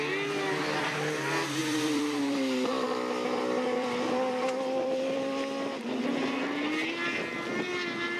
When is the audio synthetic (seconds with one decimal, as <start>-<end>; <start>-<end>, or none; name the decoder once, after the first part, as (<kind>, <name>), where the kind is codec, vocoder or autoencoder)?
1.6-6.4 (vocoder, BigVGAN v2)